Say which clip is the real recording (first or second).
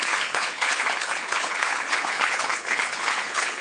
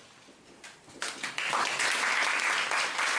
second